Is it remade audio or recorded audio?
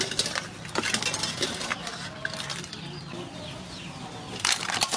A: recorded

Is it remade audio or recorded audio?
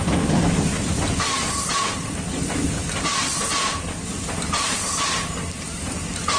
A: recorded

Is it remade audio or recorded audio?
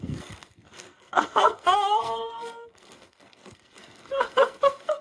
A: remade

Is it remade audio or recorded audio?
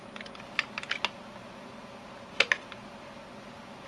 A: recorded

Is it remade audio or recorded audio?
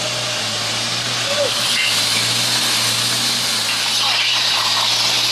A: recorded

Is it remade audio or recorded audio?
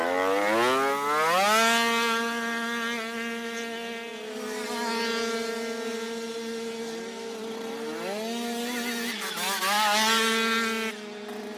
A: recorded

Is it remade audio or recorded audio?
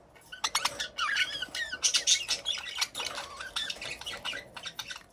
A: recorded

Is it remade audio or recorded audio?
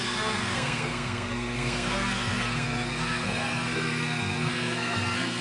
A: remade